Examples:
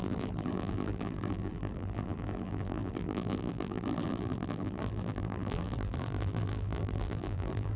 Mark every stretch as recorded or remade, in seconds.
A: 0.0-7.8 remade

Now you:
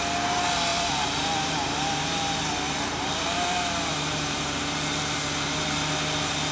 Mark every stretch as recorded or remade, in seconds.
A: 0.0-0.7 recorded; 0.7-4.6 remade; 4.6-6.5 recorded

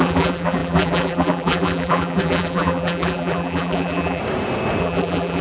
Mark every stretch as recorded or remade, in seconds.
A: 0.0-4.2 remade; 4.2-4.8 recorded; 4.8-5.4 remade

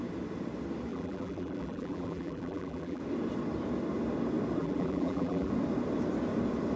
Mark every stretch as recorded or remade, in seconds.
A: 0.0-0.9 recorded; 0.9-3.0 remade; 3.0-4.6 recorded; 4.6-5.5 remade; 5.5-6.8 recorded

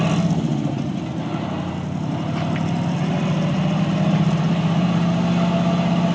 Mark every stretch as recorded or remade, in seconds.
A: 0.0-2.1 recorded; 2.1-4.9 remade; 4.9-6.1 recorded

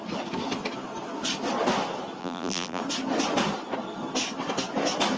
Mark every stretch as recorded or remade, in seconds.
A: 0.0-2.2 recorded; 2.2-2.8 remade; 2.8-5.2 recorded